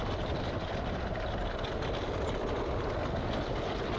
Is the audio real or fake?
real